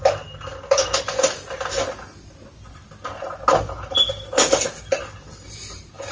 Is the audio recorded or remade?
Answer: recorded